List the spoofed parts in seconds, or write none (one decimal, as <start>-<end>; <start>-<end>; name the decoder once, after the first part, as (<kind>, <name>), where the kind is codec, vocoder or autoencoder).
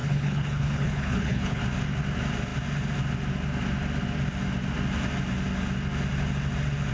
0.0-1.6 (codec, HILCodec)